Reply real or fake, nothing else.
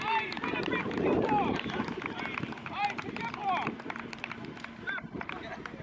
fake